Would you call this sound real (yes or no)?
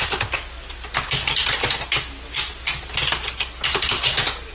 yes